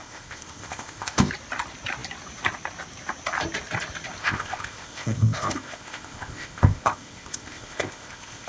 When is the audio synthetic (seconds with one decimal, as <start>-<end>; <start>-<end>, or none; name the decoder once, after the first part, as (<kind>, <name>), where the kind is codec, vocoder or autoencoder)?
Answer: 0.0-1.3 (codec, ZipCodec); 4.2-8.5